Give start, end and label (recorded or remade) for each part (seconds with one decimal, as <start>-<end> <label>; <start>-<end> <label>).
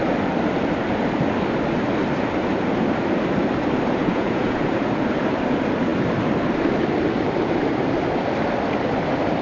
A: 0.0-4.0 recorded; 4.0-4.7 remade; 4.7-9.4 recorded